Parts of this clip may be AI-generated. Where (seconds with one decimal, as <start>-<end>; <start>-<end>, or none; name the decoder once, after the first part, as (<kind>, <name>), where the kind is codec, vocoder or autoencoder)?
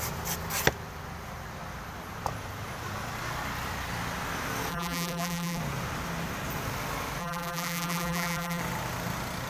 4.7-5.6 (vocoder, BigVGAN v2); 7.2-8.6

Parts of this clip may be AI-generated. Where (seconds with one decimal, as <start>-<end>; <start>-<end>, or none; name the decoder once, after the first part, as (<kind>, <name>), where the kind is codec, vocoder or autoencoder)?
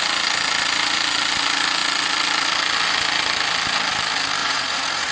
4.4-5.1 (vocoder, Vocos)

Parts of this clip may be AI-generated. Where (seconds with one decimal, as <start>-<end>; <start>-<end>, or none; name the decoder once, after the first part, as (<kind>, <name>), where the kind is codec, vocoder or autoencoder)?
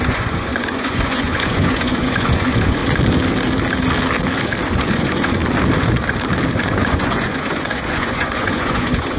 0.0-2.8 (vocoder, Vocos); 4.7-5.4; 6.6-9.2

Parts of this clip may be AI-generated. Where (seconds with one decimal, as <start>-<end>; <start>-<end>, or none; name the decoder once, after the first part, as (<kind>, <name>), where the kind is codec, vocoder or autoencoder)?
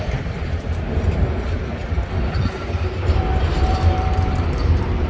0.0-1.8 (vocoder, BigVGAN v2); 2.5-5.1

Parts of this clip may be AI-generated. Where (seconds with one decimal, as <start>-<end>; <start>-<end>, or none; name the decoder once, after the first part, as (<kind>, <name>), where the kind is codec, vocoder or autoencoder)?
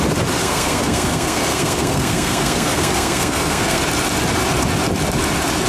0.4-3.8 (codec, SNAC)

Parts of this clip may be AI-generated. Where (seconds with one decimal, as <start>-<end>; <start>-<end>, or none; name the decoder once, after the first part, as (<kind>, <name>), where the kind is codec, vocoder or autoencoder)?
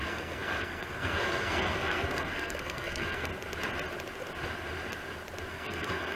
0.0-3.3 (codec, SNAC); 5.5-6.2